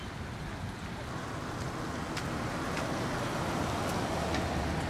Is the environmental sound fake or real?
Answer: real